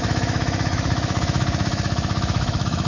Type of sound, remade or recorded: remade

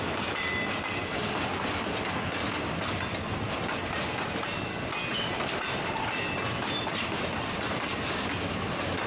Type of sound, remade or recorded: recorded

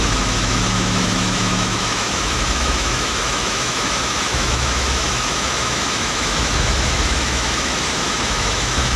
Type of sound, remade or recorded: remade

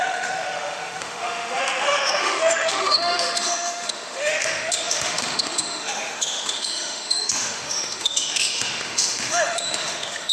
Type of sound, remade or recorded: remade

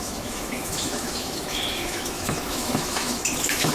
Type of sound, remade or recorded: remade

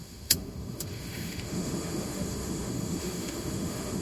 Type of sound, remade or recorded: remade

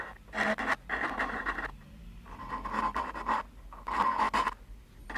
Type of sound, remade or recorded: recorded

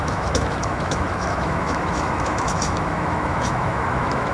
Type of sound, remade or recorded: remade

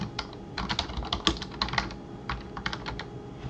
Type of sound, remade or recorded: recorded